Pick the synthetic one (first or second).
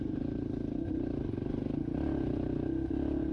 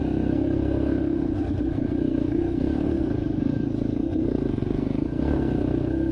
second